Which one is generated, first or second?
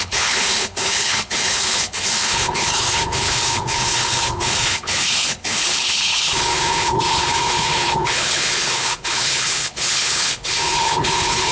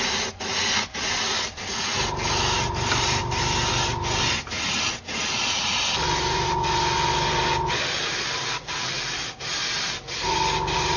first